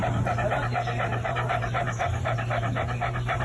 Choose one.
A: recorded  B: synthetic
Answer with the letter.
B